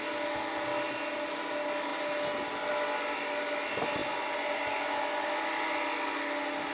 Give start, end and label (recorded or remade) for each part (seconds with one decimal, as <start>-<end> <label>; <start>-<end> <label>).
0.0-6.7 recorded